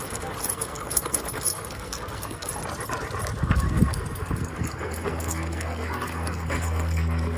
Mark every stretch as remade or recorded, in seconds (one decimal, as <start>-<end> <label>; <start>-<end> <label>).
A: 0.0-2.5 remade; 2.5-3.4 recorded; 3.4-7.4 remade